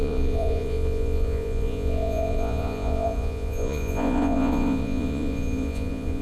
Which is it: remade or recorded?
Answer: remade